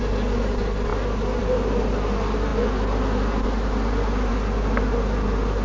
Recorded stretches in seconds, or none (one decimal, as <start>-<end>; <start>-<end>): 0.0-5.6